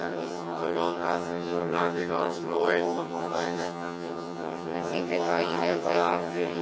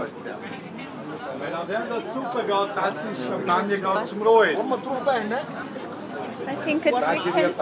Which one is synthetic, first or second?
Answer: first